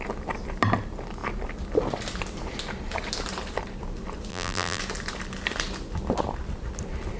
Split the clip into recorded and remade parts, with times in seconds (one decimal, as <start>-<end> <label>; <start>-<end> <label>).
0.0-4.3 recorded; 4.3-4.8 remade; 4.8-7.2 recorded